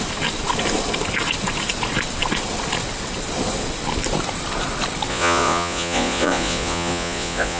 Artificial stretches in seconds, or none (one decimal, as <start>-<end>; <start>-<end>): 5.1-7.6